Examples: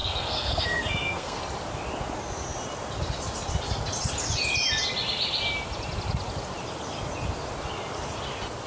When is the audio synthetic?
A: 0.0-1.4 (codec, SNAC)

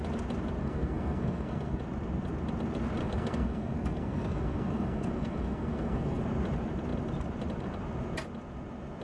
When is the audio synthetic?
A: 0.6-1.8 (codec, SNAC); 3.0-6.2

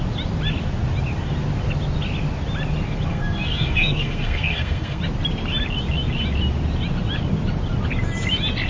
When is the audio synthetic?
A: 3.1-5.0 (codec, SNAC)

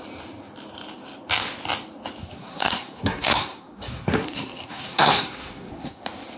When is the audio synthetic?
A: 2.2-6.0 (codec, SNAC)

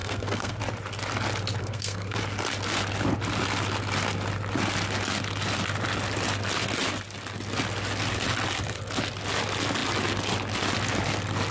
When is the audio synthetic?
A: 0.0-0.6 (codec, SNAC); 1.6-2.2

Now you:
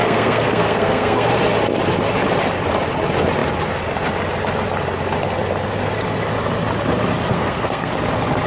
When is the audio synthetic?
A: 0.0-1.3 (codec, SNAC); 7.3-7.9